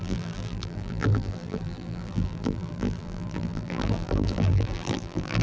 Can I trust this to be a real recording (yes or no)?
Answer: no